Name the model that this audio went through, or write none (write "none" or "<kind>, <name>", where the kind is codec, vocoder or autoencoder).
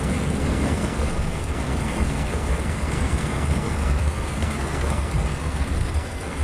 codec, SNAC